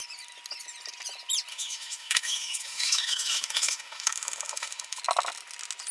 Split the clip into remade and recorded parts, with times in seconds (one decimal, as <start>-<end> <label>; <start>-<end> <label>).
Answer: 0.0-1.5 recorded; 1.5-5.0 remade; 5.0-5.9 recorded